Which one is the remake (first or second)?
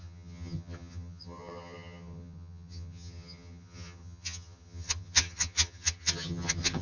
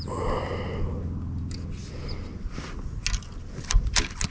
first